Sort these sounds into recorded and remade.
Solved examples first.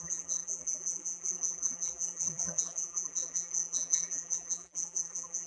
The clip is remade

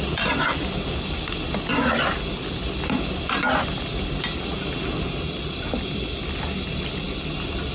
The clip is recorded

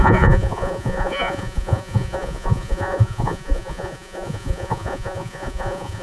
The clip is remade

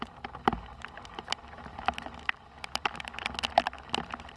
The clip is recorded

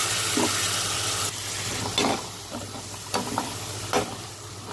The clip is recorded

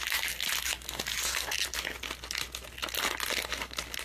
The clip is recorded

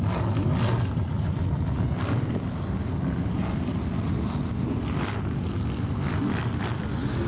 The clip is recorded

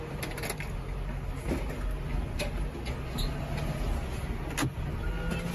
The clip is recorded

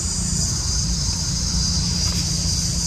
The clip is recorded